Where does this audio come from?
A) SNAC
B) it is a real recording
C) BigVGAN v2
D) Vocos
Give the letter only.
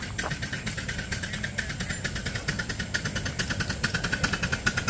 B